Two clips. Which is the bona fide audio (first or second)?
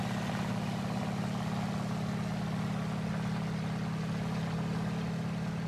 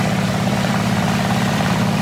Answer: first